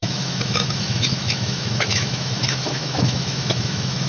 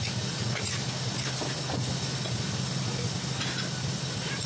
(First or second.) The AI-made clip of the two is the first